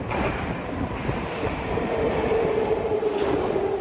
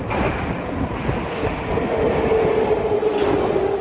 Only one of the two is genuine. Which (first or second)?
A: second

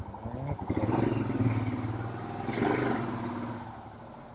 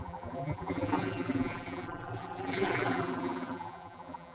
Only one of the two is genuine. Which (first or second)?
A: first